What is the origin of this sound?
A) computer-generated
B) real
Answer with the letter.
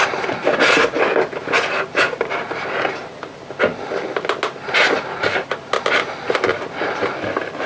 B